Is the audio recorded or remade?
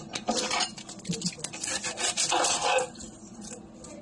recorded